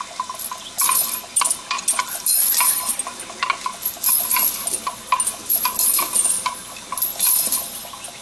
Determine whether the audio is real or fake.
real